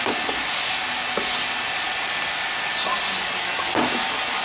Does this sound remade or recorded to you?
recorded